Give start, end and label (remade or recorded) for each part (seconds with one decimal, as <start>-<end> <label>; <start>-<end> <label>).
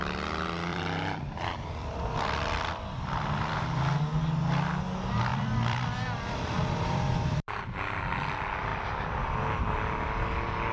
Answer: 0.0-0.7 recorded; 0.7-3.6 remade; 3.6-5.3 recorded; 5.3-7.6 remade; 7.6-10.7 recorded